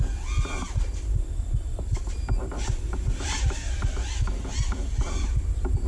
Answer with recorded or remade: recorded